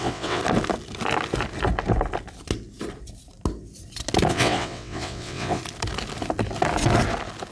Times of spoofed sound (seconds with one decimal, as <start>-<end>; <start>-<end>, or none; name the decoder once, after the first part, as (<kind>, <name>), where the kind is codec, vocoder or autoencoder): 0.0-0.4 (vocoder, WaveNeXt); 4.3-5.6